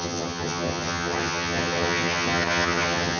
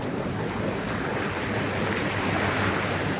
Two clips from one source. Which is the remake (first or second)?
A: first